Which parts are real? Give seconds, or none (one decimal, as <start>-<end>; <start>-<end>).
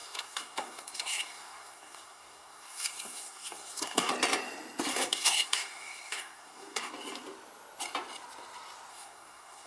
4.1-4.9; 6.9-8.9